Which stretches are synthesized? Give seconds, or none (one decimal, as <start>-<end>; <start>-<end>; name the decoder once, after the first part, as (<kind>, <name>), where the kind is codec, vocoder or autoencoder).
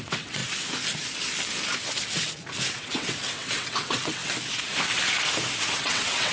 0.0-0.4 (vocoder, WaveNeXt); 2.7-4.2; 5.7-6.3